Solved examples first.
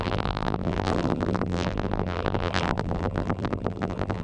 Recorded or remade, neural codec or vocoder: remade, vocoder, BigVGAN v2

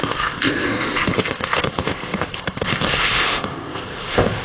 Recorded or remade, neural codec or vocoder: remade, codec, ZipCodec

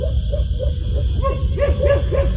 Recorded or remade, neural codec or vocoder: recorded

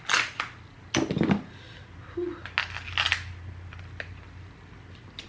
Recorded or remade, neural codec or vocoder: recorded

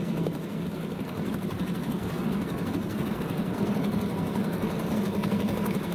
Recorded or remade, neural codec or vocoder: remade, codec, SNAC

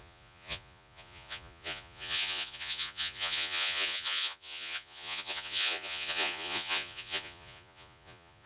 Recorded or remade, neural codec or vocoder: remade, vocoder, Vocos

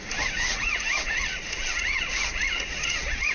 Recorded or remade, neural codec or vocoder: remade, vocoder, Vocos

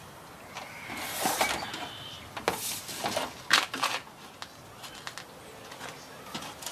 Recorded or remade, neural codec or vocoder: recorded